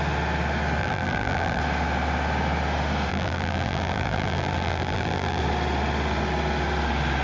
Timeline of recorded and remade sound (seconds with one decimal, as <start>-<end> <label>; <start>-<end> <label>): 0.0-0.8 recorded; 0.8-1.6 remade; 1.6-3.1 recorded; 3.1-5.4 remade; 5.4-7.2 recorded